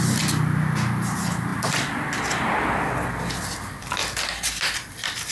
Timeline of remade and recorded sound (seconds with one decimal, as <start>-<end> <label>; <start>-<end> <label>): 0.0-5.3 recorded